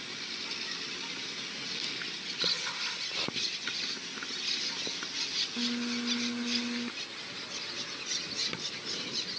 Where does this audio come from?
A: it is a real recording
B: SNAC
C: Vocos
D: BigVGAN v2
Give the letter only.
A